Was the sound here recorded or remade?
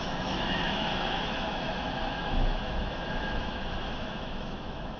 remade